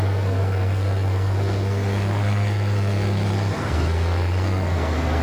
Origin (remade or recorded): remade